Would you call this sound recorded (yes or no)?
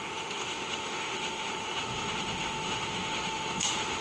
no